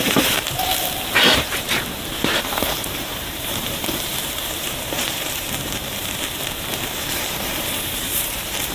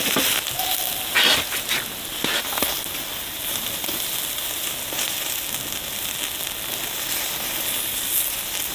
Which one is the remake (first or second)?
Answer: first